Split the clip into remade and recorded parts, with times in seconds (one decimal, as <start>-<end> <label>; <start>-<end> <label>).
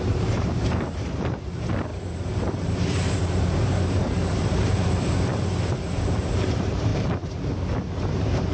0.0-6.9 remade; 6.9-7.9 recorded; 7.9-8.5 remade